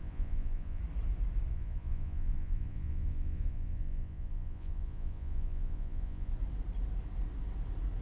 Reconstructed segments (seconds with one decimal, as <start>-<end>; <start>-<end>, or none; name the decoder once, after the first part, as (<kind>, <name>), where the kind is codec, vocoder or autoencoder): 0.0-0.8 (vocoder, Vocos); 1.5-6.3